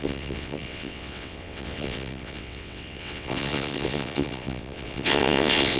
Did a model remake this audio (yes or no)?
yes